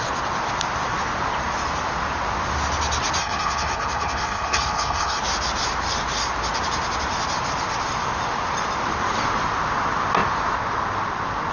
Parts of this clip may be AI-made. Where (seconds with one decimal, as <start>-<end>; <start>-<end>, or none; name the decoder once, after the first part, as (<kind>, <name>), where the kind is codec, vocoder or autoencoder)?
3.2-5.2 (codec, HILCodec)